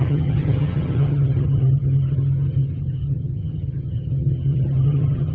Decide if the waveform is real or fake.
fake